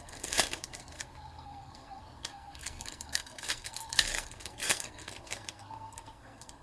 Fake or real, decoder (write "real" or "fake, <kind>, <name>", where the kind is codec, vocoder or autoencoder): fake, codec, SNAC